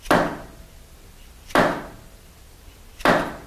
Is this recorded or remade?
recorded